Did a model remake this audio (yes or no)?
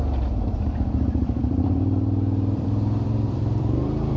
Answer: yes